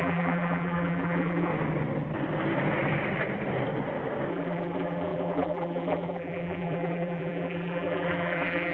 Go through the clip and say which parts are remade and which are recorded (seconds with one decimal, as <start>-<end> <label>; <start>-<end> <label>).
0.0-1.5 remade; 1.5-4.3 recorded; 4.3-8.7 remade